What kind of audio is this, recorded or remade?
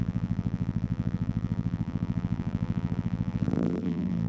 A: remade